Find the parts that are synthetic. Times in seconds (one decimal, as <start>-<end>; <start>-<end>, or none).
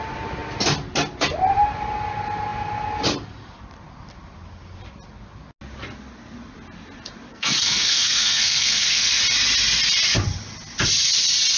7.3-9.2